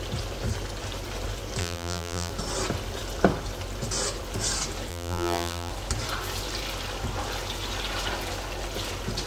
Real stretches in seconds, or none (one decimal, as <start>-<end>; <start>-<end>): 0.0-1.6; 2.3-4.9; 5.7-9.3